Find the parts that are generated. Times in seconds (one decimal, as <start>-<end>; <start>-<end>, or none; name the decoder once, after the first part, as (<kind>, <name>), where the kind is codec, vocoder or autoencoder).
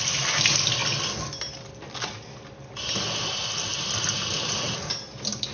none